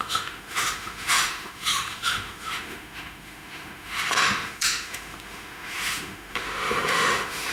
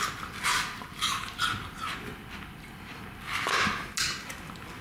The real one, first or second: second